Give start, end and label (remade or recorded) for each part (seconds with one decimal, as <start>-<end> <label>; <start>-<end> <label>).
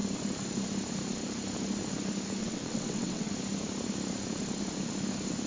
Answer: 0.0-2.4 recorded; 2.4-3.3 remade; 3.3-5.5 recorded